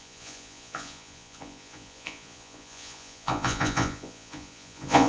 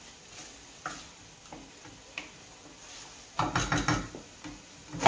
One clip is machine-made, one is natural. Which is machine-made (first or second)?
first